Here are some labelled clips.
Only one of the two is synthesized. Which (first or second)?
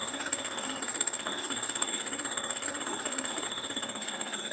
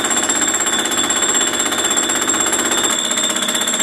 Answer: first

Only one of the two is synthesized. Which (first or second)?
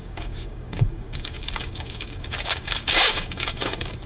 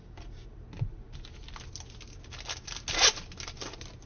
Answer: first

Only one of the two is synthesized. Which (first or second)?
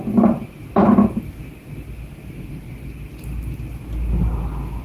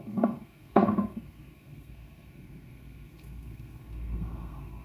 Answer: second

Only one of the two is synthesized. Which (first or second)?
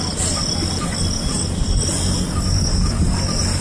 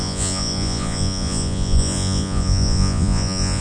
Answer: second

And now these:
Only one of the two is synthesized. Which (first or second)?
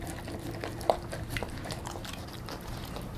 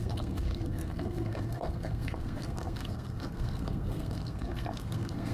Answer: second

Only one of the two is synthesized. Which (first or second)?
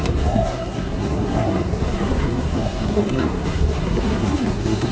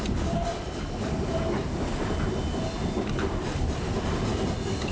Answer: first